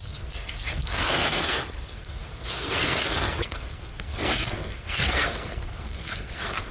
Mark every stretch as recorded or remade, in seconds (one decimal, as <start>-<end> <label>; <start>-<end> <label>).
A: 0.0-6.7 remade